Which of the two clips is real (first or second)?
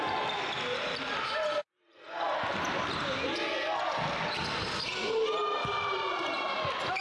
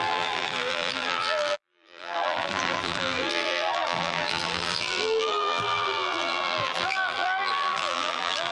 first